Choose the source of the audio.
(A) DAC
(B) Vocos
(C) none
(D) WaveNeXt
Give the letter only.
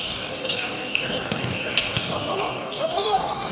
A